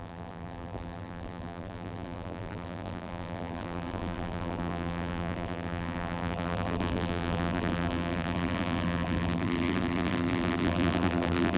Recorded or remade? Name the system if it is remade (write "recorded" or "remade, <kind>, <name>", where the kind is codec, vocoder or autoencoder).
remade, vocoder, BigVGAN v2